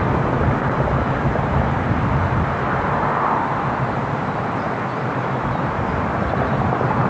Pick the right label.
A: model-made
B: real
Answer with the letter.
B